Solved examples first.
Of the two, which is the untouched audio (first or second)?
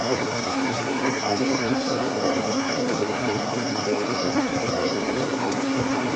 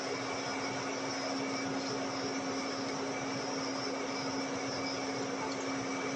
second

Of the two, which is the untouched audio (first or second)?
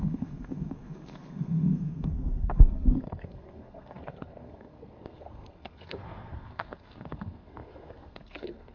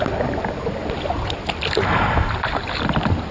second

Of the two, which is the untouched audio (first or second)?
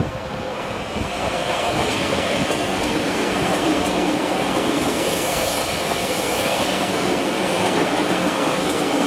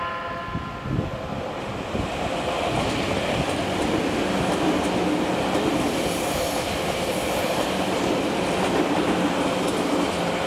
second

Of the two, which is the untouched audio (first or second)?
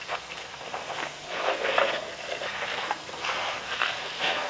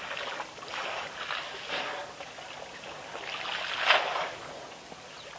second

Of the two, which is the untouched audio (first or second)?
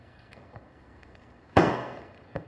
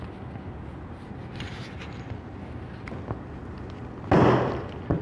second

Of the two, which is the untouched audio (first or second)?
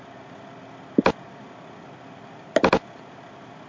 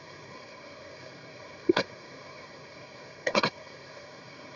first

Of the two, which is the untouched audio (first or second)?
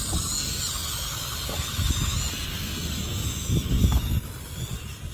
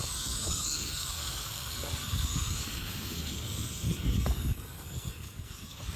first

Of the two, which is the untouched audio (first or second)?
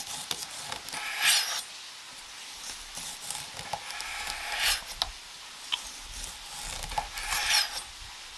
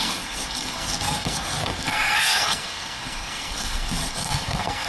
first